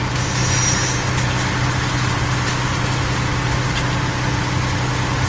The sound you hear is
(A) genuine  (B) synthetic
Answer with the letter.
A